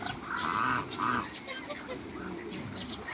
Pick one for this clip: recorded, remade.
recorded